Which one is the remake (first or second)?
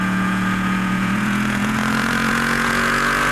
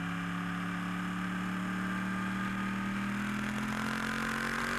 first